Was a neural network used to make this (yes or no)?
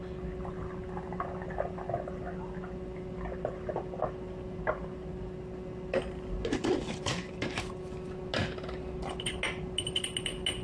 no